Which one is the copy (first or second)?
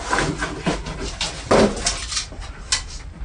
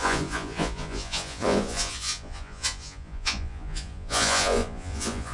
second